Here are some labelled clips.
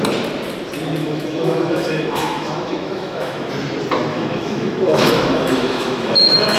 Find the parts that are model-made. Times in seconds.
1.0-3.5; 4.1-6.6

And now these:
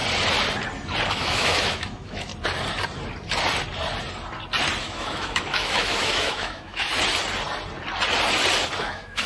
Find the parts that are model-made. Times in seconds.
1.1-2.3; 4.8-6.9; 8.8-9.3

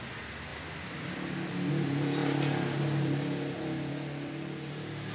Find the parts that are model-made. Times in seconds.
none